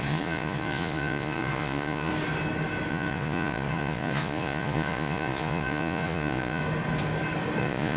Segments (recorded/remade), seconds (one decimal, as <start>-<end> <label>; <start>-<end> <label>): 0.0-2.1 remade; 2.1-2.9 recorded; 2.9-6.6 remade; 6.6-7.6 recorded; 7.6-8.0 remade